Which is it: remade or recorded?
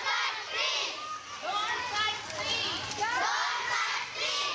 recorded